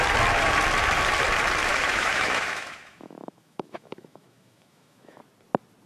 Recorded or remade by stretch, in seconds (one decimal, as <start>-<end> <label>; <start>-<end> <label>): 0.0-1.7 recorded; 1.7-5.2 remade; 5.2-5.9 recorded